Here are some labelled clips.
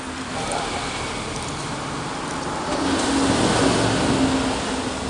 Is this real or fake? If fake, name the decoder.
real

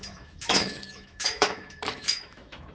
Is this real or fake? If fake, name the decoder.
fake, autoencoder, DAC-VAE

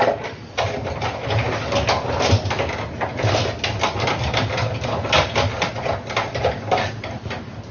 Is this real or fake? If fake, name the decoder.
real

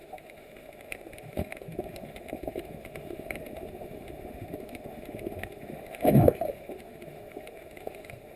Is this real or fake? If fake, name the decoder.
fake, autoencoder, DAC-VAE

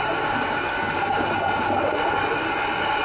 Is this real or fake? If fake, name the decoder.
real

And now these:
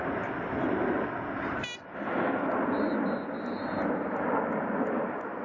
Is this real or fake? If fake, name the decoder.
real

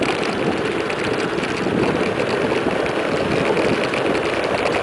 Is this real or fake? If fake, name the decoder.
real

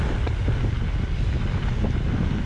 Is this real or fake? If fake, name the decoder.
real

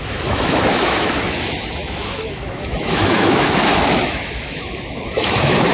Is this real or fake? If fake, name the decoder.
fake, autoencoder, DAC-VAE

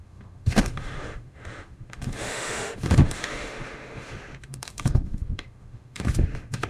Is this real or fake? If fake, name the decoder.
fake, autoencoder, DAC-VAE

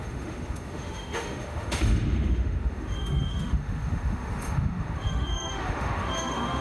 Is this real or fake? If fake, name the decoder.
fake, autoencoder, DAC-VAE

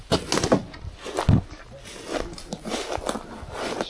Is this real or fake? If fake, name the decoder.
real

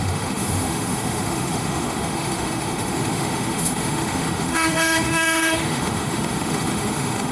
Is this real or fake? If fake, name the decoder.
fake, autoencoder, DAC-VAE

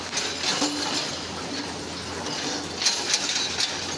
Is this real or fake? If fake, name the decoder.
real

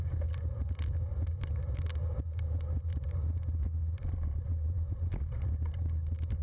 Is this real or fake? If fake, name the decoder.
real